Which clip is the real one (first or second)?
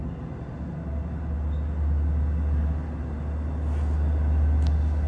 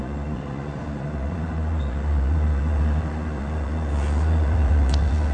first